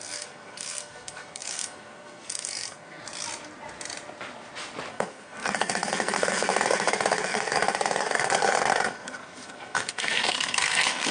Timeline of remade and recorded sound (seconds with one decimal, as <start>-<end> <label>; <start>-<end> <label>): 0.0-3.0 remade; 3.0-4.9 recorded; 4.9-11.1 remade